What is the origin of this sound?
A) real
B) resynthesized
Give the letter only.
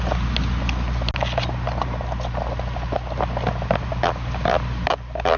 A